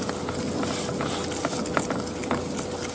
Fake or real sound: real